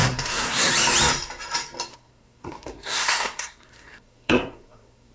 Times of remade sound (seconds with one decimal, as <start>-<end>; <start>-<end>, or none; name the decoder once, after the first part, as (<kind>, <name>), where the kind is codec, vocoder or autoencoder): 0.0-0.7 (codec, SNAC); 1.9-5.1